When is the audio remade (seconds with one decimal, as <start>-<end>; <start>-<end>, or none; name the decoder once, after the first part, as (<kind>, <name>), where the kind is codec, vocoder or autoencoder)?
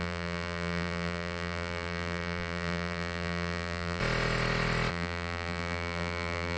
0.0-4.0 (vocoder, BigVGAN v2); 4.9-6.6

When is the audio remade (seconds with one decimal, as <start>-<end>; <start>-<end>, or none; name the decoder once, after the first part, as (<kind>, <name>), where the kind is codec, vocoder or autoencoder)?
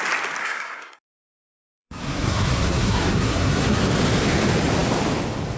0.4-3.8 (codec, SNAC)